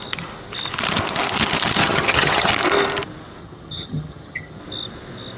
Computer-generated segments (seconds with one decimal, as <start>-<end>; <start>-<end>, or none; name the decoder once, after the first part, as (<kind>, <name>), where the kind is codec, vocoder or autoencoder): 1.8-2.5 (vocoder, HiFi-GAN); 3.4-4.6